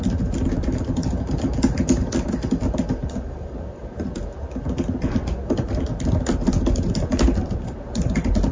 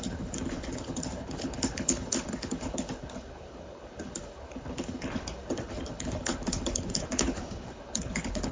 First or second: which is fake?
second